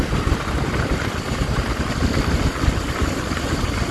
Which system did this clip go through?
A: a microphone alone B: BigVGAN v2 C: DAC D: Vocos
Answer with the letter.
A